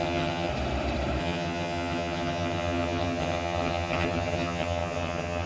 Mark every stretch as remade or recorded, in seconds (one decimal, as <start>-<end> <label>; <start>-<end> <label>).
0.0-0.5 remade; 0.5-1.2 recorded; 1.2-5.5 remade